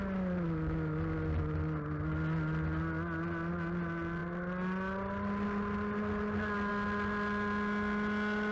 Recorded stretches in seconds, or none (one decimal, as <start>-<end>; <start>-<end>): 0.0-8.5